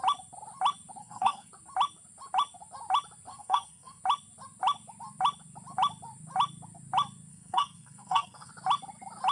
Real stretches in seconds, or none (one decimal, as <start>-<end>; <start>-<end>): 0.0-1.0; 1.5-3.3; 4.0-7.3; 8.5-9.3